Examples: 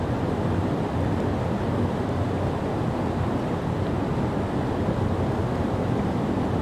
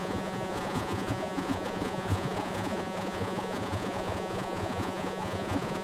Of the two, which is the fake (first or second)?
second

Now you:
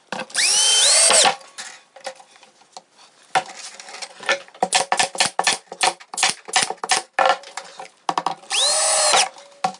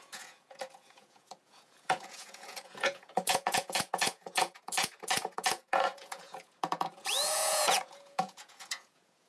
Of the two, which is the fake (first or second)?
second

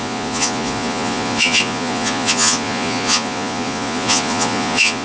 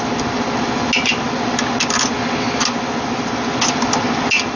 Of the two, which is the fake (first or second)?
first